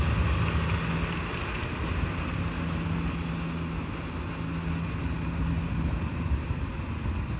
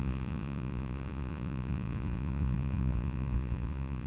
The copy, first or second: second